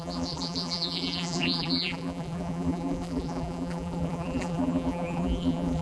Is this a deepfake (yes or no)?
yes